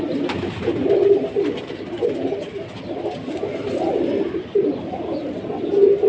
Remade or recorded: recorded